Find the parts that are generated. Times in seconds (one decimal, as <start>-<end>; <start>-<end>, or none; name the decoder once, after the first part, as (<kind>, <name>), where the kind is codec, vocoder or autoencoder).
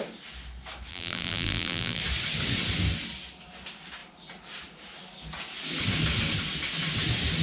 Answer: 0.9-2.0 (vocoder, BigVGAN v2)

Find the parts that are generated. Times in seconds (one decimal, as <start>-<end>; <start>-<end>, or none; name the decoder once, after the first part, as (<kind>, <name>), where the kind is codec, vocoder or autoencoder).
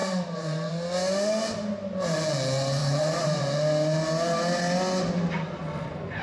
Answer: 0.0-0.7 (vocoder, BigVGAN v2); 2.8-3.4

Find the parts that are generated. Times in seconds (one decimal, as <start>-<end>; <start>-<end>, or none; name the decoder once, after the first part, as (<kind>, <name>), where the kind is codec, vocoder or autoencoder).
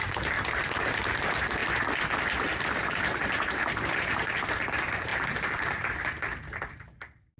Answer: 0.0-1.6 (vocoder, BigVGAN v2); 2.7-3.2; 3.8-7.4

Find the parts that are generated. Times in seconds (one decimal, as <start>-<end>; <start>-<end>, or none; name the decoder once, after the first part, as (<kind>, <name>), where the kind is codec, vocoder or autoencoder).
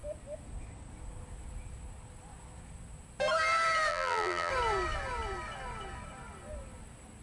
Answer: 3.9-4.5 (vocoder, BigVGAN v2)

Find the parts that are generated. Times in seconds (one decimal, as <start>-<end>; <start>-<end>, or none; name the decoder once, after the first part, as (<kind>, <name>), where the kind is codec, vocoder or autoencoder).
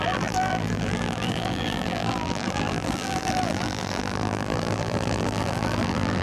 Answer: 0.0-6.2 (vocoder, BigVGAN v2)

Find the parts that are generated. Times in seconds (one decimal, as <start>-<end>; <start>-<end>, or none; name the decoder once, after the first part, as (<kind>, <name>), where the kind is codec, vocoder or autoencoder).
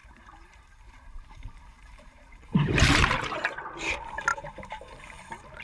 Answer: 0.0-3.4 (vocoder, BigVGAN v2); 4.3-5.0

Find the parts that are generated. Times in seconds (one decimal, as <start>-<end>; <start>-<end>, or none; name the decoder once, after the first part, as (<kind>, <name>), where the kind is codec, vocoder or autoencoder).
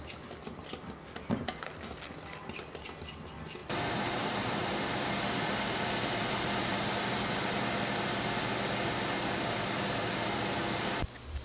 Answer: 3.6-7.1 (vocoder, BigVGAN v2)